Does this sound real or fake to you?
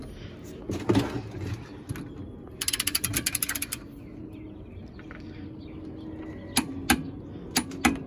real